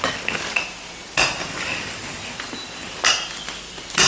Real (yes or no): yes